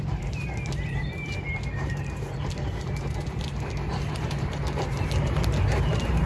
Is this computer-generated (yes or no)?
yes